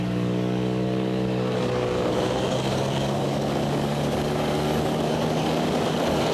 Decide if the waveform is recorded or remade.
remade